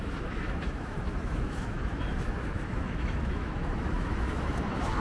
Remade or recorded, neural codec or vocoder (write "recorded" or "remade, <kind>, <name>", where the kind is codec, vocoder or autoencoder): remade, autoencoder, DAC-VAE